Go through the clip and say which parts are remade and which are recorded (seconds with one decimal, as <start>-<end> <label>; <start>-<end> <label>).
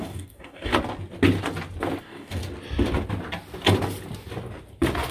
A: 0.0-0.7 remade; 0.7-2.0 recorded; 2.0-2.4 remade; 2.4-5.1 recorded